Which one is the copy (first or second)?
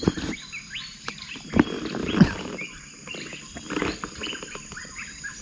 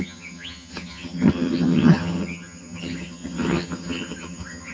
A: second